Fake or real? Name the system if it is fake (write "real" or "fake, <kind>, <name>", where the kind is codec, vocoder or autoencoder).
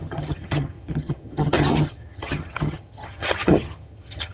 fake, vocoder, HiFi-GAN